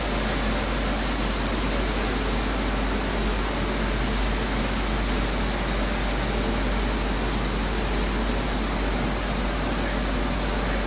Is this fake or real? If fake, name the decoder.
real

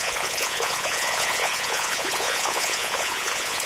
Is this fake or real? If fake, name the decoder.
fake, vocoder, Vocos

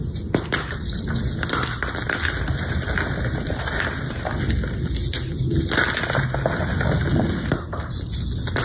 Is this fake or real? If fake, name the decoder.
real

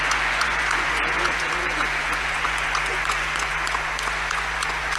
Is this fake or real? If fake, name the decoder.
fake, vocoder, Vocos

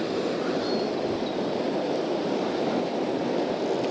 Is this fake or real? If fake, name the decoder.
real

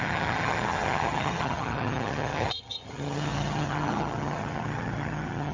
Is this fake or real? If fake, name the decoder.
fake, vocoder, HiFi-GAN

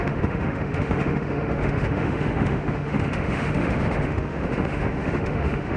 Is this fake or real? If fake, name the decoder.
fake, autoencoder, DAC-VAE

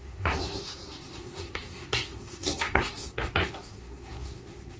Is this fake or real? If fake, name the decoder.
fake, codec, SNAC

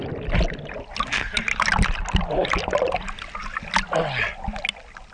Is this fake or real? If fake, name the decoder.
real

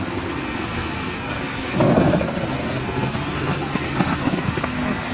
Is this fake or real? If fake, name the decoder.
fake, codec, SNAC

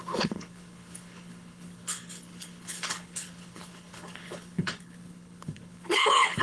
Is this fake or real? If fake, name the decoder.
fake, codec, HILCodec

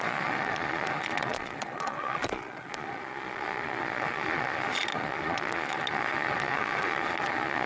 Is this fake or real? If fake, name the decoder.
fake, vocoder, Vocos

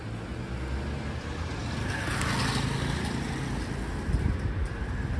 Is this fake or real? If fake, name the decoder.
real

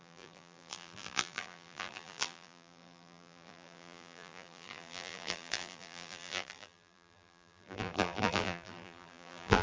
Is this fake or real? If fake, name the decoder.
fake, vocoder, BigVGAN v2